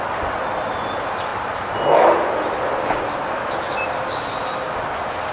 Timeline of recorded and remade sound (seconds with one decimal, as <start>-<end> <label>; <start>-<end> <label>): 0.0-5.3 recorded